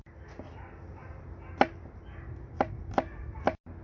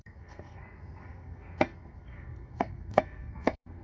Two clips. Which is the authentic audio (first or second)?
first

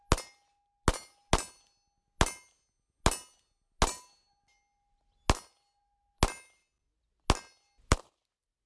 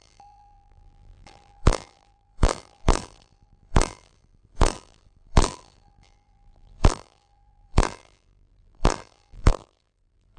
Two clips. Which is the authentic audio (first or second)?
first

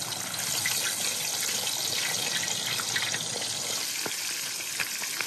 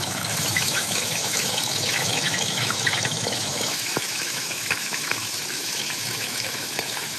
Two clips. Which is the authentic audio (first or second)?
first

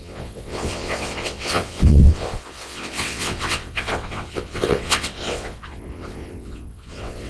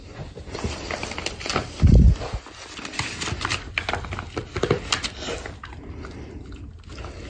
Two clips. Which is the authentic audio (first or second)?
second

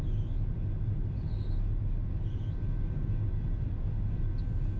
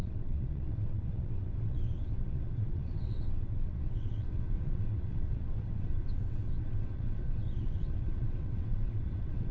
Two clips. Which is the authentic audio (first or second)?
first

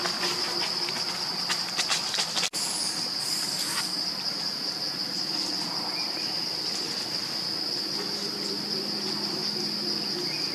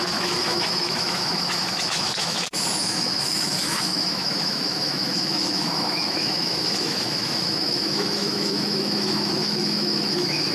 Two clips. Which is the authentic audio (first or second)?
first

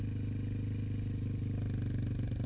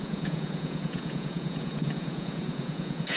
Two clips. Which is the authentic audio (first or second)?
first